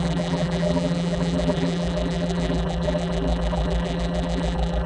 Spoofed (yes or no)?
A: yes